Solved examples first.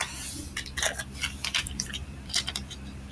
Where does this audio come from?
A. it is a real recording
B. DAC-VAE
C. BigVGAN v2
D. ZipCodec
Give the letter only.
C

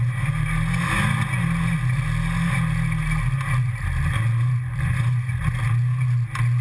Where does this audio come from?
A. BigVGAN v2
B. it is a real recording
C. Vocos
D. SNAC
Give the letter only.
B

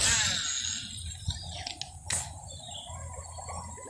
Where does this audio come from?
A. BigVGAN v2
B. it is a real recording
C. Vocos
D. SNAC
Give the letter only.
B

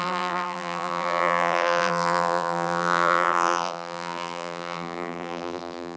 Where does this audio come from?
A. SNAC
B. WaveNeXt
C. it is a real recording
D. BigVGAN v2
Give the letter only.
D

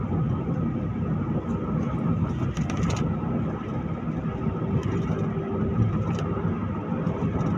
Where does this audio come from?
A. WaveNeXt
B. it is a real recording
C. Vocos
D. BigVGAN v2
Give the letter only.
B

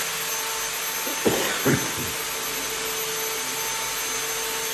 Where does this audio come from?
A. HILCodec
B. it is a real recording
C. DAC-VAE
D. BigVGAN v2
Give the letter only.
B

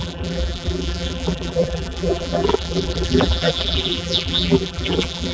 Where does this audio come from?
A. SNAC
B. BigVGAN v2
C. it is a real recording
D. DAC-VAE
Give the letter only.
B